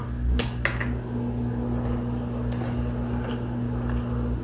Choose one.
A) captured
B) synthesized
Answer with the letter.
A